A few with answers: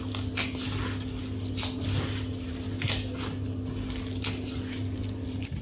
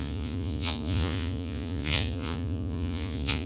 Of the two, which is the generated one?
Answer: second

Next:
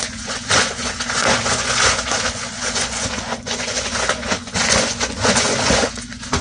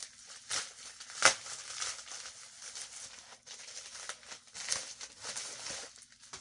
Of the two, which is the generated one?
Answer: first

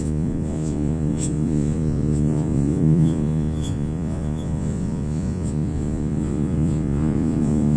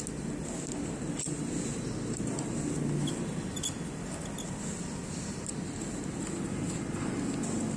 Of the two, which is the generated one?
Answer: first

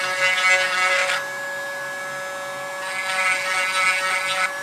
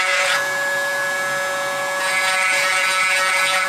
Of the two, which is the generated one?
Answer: second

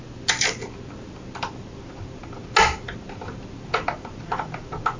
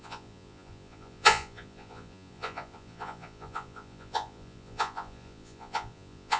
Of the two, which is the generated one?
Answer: second